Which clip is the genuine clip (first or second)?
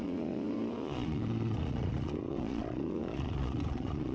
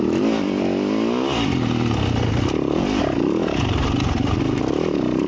second